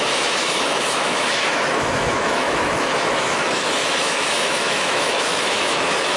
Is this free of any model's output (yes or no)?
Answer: no